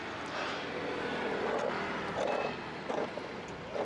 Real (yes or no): yes